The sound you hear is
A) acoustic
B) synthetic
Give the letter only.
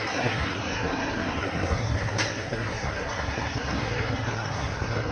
B